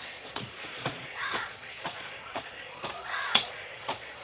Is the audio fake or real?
fake